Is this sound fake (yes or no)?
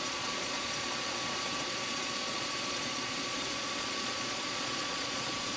yes